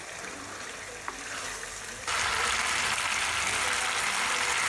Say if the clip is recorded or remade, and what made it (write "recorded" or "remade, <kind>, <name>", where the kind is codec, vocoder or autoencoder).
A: recorded